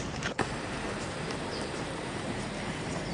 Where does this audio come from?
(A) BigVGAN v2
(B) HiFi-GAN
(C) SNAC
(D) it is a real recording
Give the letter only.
A